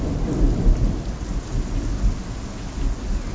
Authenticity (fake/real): real